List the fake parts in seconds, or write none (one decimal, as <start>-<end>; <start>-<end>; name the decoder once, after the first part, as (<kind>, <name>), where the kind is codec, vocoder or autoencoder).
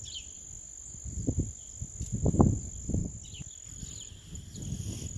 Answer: none